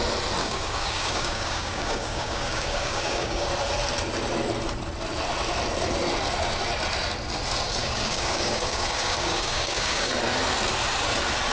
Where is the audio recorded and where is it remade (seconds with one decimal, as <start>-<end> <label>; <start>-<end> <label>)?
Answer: 0.0-0.4 recorded; 0.4-3.5 remade; 3.5-7.8 recorded; 7.8-10.1 remade; 10.1-11.5 recorded